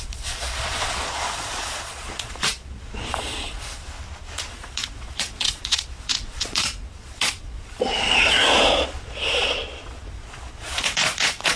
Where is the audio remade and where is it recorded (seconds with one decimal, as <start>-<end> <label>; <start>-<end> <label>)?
0.0-3.9 remade; 3.9-4.5 recorded; 4.5-11.6 remade